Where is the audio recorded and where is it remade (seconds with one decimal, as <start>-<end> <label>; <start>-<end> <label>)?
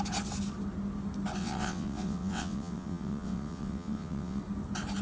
0.0-1.4 recorded; 1.4-4.4 remade; 4.4-5.0 recorded